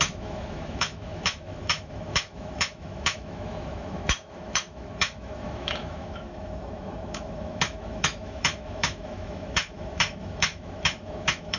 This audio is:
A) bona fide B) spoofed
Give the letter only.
B